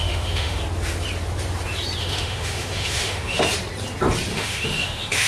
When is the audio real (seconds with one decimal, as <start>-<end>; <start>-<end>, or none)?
0.6-2.0; 3.4-4.3